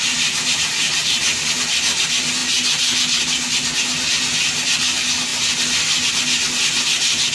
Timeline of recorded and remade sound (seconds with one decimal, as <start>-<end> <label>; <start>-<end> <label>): 0.0-7.3 recorded